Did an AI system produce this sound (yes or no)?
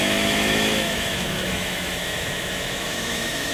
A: yes